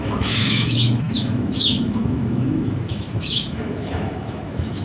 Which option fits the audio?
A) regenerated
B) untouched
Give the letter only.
A